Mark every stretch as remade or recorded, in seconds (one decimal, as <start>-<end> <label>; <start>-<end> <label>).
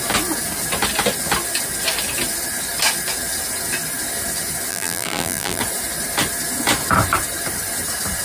0.0-4.7 recorded; 4.7-5.6 remade; 5.6-8.2 recorded